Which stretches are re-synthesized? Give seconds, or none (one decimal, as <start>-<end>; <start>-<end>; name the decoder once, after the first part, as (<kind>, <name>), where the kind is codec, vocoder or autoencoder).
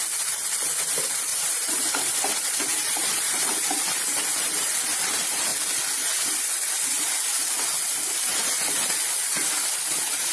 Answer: 1.3-2.3 (vocoder, BigVGAN v2); 2.7-3.8